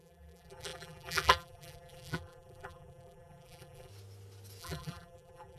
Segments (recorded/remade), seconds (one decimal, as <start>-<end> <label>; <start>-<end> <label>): 0.0-3.9 remade; 3.9-4.6 recorded; 4.6-5.6 remade

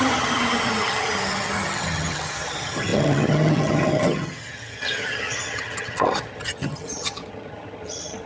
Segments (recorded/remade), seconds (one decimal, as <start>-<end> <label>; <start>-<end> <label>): 0.0-8.3 remade

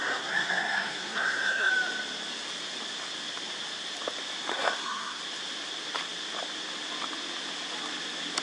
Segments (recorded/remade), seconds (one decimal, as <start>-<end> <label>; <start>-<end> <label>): 0.0-1.7 remade; 1.7-4.5 recorded; 4.5-5.2 remade; 5.2-8.4 recorded

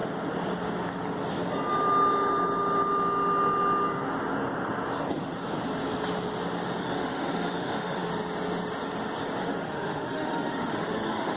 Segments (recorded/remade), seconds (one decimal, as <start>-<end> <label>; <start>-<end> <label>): 0.0-6.8 recorded; 6.8-8.1 remade; 8.1-9.4 recorded; 9.4-11.4 remade